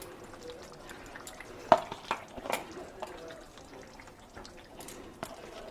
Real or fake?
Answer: real